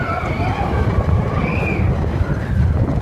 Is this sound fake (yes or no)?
no